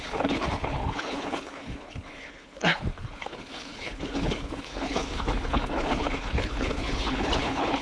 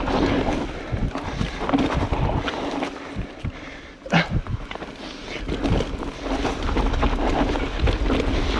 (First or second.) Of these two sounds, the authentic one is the second